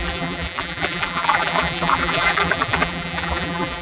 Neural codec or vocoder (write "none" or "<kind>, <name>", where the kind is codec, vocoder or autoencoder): vocoder, BigVGAN v2